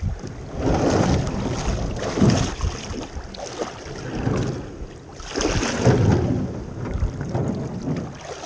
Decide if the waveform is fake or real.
real